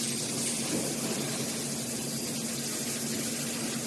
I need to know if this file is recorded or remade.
recorded